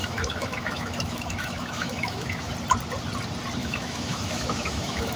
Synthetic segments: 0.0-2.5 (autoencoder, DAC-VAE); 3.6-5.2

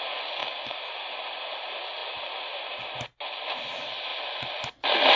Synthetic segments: none

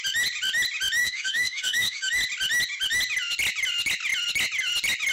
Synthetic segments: 1.0-2.1 (autoencoder, DAC-VAE)

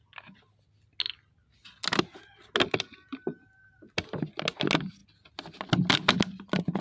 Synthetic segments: none

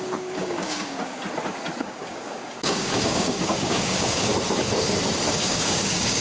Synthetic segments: 0.0-1.2 (codec, DAC); 1.8-4.3; 5.3-6.2